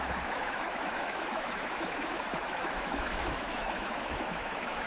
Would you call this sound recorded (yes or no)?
no